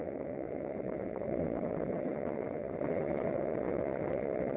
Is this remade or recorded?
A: remade